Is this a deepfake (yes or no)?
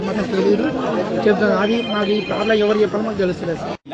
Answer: yes